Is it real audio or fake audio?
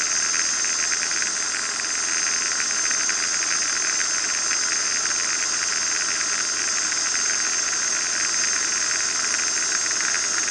real